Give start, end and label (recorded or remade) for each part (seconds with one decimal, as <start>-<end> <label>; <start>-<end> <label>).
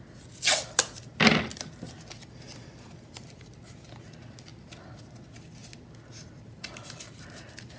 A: 0.0-7.8 recorded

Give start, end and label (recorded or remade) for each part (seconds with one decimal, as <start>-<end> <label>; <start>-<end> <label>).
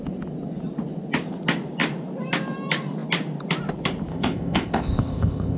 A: 0.0-4.1 recorded; 4.1-5.6 remade